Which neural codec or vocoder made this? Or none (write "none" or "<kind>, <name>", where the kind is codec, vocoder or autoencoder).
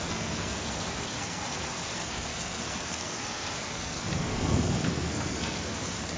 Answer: codec, SNAC